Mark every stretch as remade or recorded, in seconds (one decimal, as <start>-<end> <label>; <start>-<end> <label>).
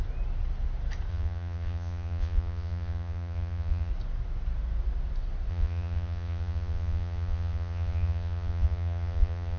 0.0-1.1 recorded; 1.1-3.9 remade; 3.9-5.5 recorded; 5.5-9.6 remade